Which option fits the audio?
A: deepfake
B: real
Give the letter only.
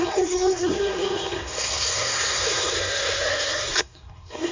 A